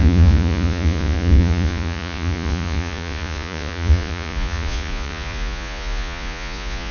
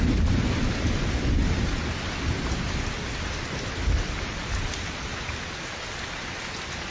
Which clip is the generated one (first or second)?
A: first